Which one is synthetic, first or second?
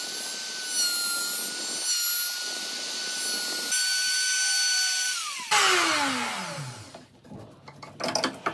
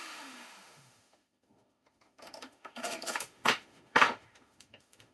second